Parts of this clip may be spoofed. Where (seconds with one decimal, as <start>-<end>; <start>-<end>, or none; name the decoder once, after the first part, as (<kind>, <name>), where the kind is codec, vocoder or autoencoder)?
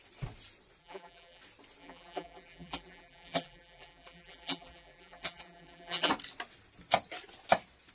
0.8-1.4 (vocoder, BigVGAN v2); 1.8-6.1